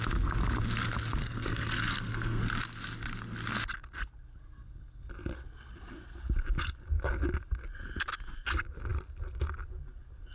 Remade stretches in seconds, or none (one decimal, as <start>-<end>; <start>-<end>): 1.2-2.4